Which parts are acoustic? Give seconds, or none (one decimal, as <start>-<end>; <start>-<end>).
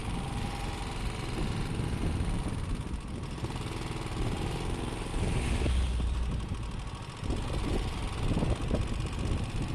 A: 0.0-9.7